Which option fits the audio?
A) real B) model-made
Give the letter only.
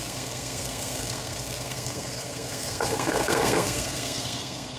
B